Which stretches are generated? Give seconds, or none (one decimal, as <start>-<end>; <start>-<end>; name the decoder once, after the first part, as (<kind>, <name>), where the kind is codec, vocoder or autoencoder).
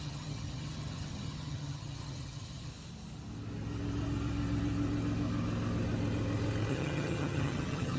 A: 0.0-2.7 (vocoder, HiFi-GAN); 6.7-8.0